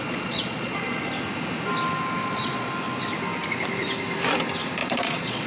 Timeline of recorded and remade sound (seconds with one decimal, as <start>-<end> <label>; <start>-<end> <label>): 0.0-1.1 remade; 1.1-2.2 recorded; 2.2-2.7 remade; 2.7-4.8 recorded; 4.8-5.5 remade